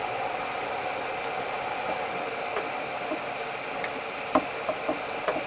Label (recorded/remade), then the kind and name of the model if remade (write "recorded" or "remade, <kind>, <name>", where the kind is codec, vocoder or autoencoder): recorded